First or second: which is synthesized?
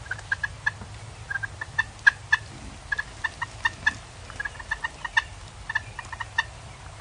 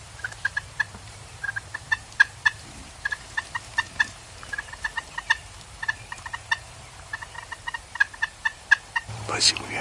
second